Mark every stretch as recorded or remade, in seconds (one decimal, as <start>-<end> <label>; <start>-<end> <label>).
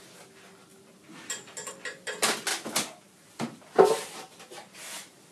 0.0-5.3 recorded